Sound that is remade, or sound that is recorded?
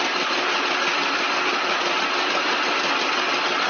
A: recorded